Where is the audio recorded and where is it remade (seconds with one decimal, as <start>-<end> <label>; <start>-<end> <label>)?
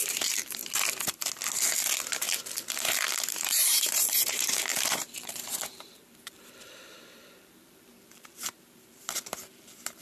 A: 0.0-0.6 remade; 0.6-3.3 recorded; 3.3-10.0 remade